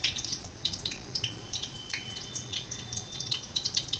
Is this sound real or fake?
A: fake